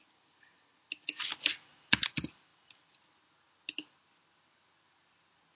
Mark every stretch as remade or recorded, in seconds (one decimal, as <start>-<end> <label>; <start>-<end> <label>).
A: 0.0-5.5 recorded